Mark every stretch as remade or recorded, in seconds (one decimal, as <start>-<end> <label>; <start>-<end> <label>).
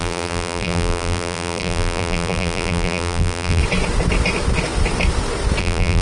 0.0-3.6 remade; 3.6-5.6 recorded; 5.6-6.0 remade